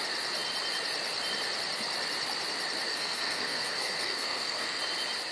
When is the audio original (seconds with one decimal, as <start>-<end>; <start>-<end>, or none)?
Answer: 0.0-2.9; 4.8-5.3